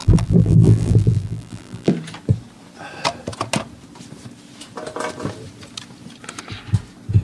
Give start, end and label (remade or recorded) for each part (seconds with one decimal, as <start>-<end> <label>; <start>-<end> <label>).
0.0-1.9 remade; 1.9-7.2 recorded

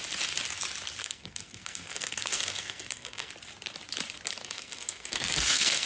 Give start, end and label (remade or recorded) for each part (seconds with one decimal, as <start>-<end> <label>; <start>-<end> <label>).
0.0-1.0 recorded; 1.0-3.3 remade; 3.3-4.4 recorded; 4.4-5.9 remade

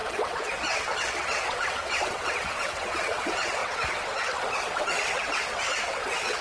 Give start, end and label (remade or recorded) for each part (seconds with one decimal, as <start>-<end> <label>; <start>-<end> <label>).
0.0-6.4 remade